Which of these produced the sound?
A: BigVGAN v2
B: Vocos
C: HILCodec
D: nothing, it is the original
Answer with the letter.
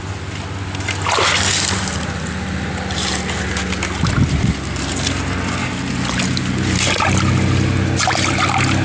D